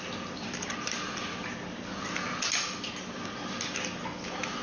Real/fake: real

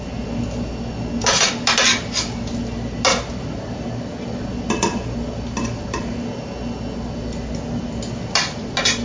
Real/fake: real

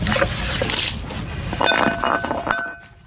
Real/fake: real